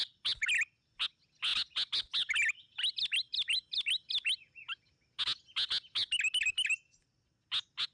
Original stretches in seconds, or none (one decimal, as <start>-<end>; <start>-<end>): 0.0-7.9

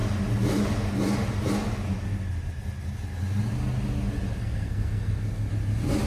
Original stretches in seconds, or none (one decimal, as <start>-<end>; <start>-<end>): 0.0-4.4; 5.5-6.1

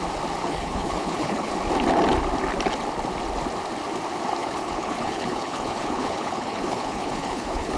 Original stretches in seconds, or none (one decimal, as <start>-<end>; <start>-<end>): 0.0-0.4; 1.5-4.4

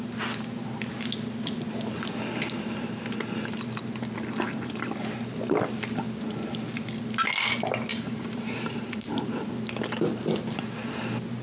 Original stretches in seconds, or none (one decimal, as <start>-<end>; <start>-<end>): 0.0-7.9; 9.5-11.4

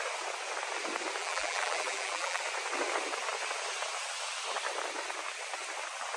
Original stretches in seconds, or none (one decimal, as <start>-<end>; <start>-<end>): 0.0-1.2; 2.4-6.2